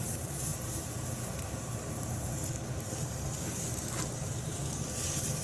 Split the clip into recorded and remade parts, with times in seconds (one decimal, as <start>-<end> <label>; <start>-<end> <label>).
0.0-2.3 remade; 2.3-4.1 recorded; 4.1-5.4 remade